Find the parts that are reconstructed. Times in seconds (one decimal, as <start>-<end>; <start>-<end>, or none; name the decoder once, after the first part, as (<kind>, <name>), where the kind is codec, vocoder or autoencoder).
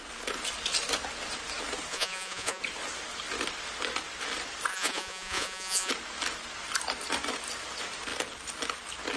1.9-2.6 (vocoder, Vocos); 4.7-5.9